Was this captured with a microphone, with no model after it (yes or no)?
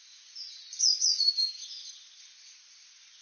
yes